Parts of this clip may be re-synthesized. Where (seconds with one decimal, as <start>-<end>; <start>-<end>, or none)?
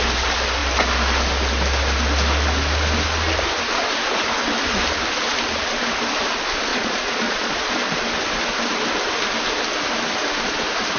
6.7-7.9